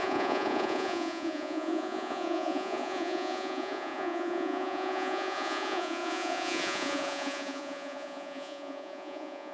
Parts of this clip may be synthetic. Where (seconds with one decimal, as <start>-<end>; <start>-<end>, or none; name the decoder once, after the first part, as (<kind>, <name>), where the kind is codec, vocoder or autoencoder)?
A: 0.0-9.5 (vocoder, Vocos)